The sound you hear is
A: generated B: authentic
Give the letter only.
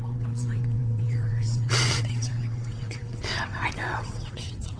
A